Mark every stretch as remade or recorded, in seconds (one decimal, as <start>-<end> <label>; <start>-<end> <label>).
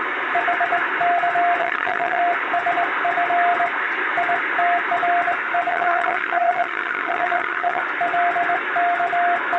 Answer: 0.0-1.6 recorded; 1.6-2.2 remade; 2.2-5.7 recorded; 5.7-7.8 remade; 7.8-9.6 recorded